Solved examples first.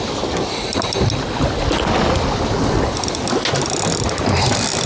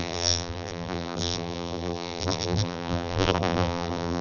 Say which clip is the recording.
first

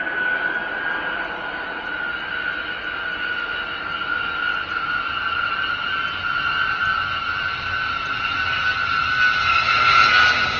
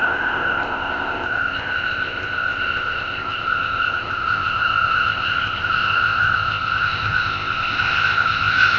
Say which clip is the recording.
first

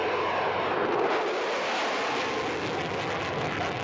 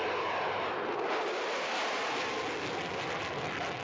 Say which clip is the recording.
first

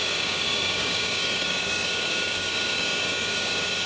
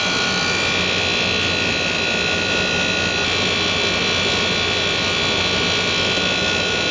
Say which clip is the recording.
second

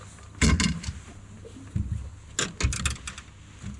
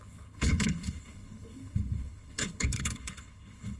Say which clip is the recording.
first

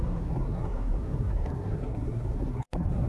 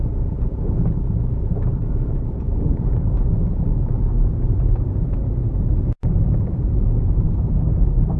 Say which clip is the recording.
second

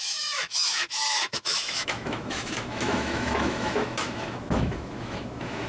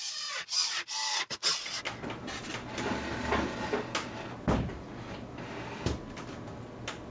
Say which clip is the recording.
second